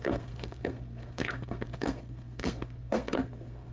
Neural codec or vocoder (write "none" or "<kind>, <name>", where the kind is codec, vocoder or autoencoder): codec, SNAC